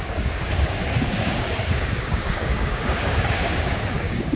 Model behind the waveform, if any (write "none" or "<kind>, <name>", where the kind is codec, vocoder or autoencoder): codec, DAC